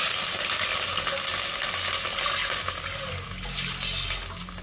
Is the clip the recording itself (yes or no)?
yes